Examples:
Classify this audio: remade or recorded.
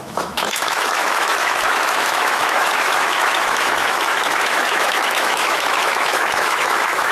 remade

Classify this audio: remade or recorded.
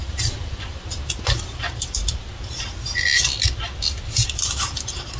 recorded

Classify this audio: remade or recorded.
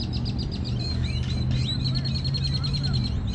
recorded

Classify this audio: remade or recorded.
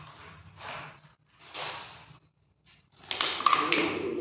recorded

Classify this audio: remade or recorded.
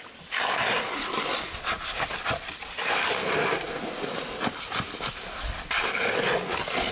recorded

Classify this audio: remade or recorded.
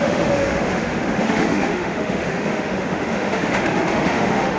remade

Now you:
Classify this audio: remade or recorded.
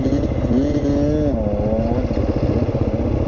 recorded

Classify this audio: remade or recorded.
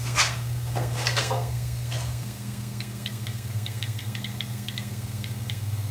remade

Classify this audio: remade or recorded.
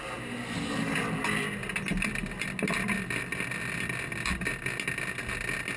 recorded